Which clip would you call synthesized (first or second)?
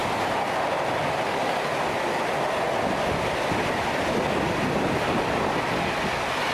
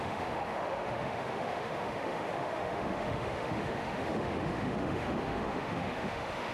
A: second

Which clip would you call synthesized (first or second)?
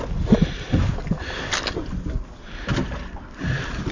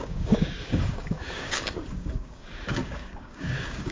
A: second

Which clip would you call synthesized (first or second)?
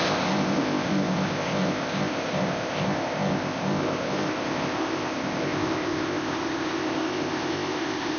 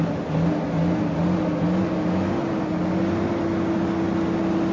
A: first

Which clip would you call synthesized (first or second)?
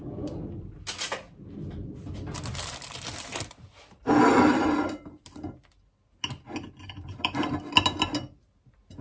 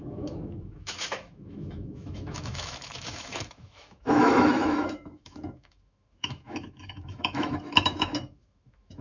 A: second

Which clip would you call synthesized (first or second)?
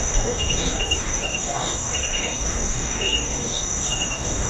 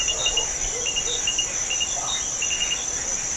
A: first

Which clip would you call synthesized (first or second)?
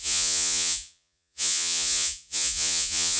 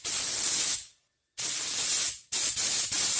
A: first